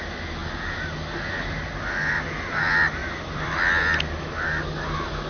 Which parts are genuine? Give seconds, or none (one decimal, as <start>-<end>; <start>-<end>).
0.0-3.0; 3.5-5.3